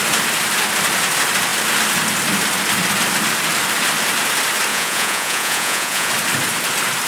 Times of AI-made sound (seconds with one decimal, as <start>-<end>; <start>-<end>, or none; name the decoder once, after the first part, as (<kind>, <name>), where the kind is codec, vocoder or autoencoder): 4.7-6.1 (vocoder, Vocos)